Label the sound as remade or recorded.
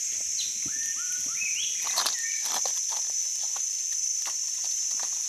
recorded